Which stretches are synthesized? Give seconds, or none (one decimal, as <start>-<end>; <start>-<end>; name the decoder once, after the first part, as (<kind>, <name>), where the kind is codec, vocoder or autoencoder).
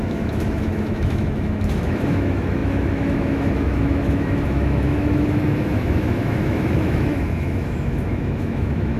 0.0-9.0 (autoencoder, DAC-VAE)